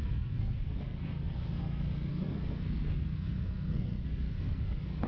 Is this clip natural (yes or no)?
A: no